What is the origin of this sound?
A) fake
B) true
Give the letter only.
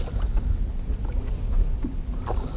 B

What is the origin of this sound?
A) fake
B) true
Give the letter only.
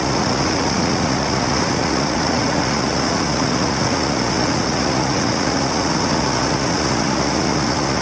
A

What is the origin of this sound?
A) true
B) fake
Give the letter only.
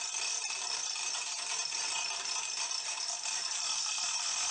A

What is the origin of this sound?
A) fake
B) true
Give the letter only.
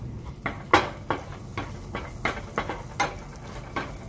B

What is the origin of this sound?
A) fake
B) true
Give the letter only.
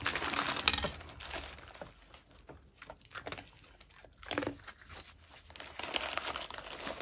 B